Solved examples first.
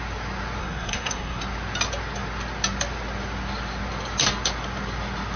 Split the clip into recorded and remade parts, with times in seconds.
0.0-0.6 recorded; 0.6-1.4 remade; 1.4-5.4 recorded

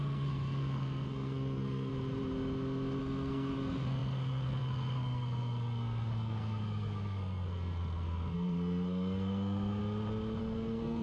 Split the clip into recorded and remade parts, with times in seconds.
0.0-1.9 remade; 1.9-3.0 recorded; 3.0-9.8 remade; 9.8-10.4 recorded; 10.4-11.0 remade

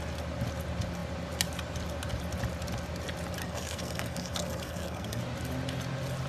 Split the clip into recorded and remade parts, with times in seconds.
0.0-3.4 recorded; 3.4-5.2 remade; 5.2-6.3 recorded

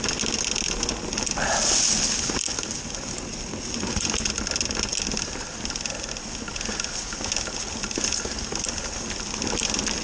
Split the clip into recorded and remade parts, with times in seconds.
0.0-10.0 recorded